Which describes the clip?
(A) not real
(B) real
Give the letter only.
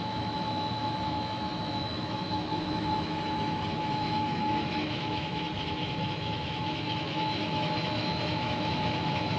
A